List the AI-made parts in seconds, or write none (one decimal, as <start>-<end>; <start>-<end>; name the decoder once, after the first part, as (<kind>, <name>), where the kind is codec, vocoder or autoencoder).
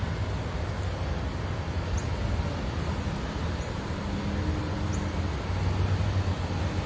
none